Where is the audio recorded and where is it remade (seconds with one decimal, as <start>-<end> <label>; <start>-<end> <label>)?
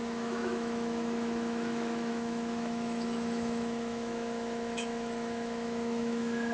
0.0-6.5 remade